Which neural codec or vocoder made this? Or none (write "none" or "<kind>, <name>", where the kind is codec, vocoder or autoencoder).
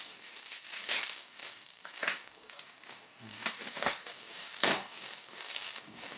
codec, DAC